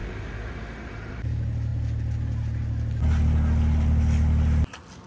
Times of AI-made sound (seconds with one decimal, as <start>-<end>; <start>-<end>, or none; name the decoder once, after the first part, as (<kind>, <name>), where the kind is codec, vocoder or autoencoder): 0.8-1.7 (vocoder, BigVGAN v2)